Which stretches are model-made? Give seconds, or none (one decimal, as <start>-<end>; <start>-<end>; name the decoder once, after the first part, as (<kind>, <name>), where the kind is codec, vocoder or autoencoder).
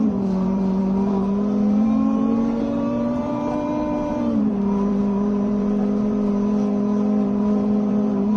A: 0.0-6.3 (vocoder, BigVGAN v2); 7.4-8.4